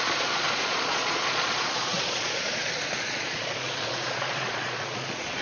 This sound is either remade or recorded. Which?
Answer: remade